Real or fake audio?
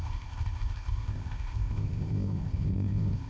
fake